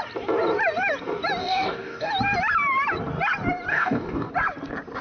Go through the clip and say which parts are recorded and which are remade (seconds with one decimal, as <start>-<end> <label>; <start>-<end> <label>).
0.0-1.4 recorded; 1.4-2.1 remade; 2.1-3.7 recorded; 3.7-4.3 remade; 4.3-5.0 recorded